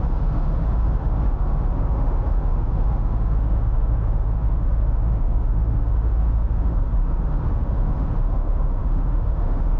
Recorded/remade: remade